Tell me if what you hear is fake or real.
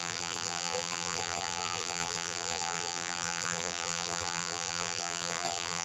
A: fake